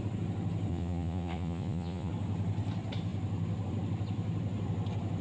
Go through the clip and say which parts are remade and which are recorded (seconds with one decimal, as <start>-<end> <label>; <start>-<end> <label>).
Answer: 0.0-0.7 recorded; 0.7-2.1 remade; 2.1-5.2 recorded